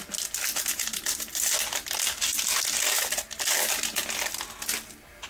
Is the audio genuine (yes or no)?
yes